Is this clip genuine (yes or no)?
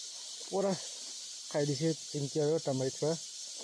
yes